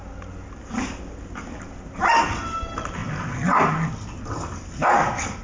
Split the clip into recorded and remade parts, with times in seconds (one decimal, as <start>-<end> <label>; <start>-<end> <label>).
0.0-5.4 recorded